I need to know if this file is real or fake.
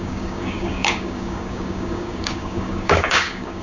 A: fake